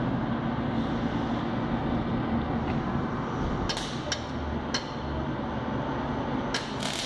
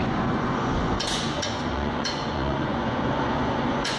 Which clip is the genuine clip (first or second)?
first